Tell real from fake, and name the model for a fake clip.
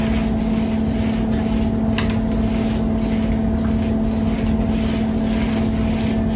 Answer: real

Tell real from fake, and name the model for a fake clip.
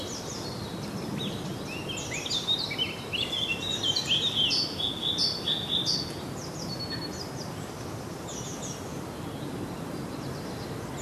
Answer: real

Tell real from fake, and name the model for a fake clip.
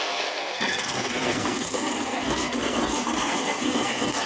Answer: fake, codec, SNAC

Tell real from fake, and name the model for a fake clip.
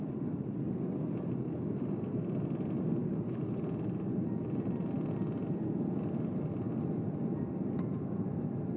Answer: real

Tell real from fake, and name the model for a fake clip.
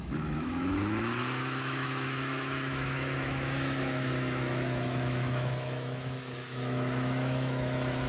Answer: fake, autoencoder, DAC-VAE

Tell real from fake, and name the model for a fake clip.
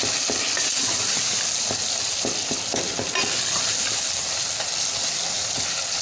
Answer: real